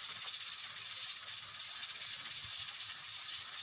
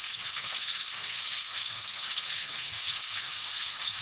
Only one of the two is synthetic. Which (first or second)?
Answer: second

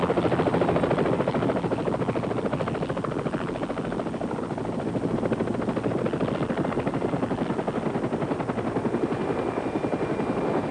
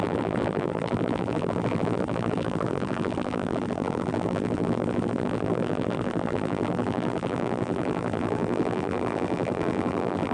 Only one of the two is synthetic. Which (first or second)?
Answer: second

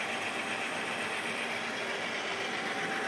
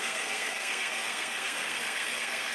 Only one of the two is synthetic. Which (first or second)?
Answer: second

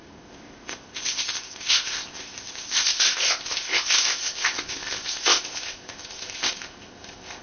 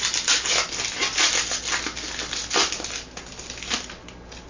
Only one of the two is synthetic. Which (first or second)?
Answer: first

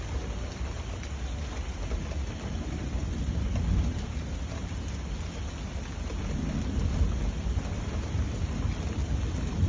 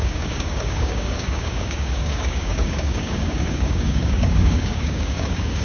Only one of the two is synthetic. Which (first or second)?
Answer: second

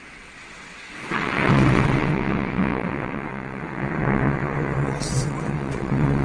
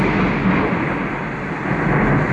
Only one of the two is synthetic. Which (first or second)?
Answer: first